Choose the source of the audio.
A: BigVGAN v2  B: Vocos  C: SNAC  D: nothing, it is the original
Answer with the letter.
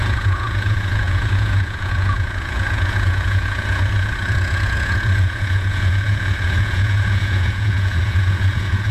B